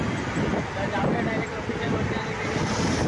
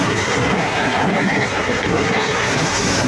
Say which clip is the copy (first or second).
second